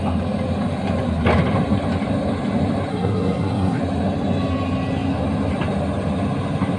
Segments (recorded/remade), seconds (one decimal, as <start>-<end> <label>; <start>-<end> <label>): 0.0-2.9 recorded; 2.9-3.8 remade; 3.8-6.8 recorded

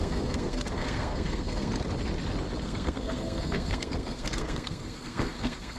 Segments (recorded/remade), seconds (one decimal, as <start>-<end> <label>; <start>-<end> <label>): 0.0-1.7 remade; 1.7-2.6 recorded; 2.6-5.8 remade

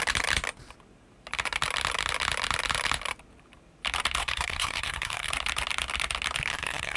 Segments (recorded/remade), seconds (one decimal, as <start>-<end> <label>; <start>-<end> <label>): 0.0-4.2 recorded; 4.2-5.3 remade; 5.3-6.5 recorded; 6.5-7.0 remade

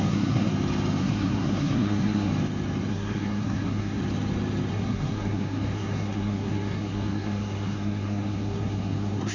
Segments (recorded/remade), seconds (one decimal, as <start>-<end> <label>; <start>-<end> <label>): 0.0-0.5 remade; 0.5-1.0 recorded; 1.0-2.3 remade; 2.3-2.9 recorded; 2.9-4.0 remade; 4.0-4.7 recorded; 4.7-9.3 remade

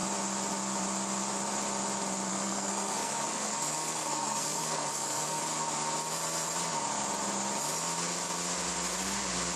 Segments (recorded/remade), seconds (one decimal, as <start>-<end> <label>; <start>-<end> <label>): 0.0-2.3 recorded; 2.3-5.4 remade; 5.4-9.6 recorded

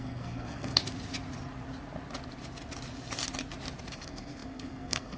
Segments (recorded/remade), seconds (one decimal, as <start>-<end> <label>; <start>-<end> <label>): 0.0-0.8 remade; 0.8-3.9 recorded; 3.9-5.2 remade

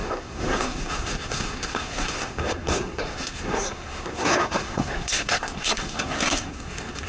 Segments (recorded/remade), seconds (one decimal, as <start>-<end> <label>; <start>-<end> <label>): 0.0-7.1 remade